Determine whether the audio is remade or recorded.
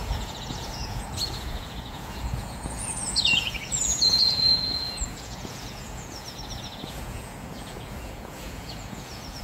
remade